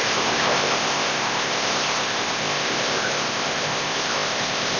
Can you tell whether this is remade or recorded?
remade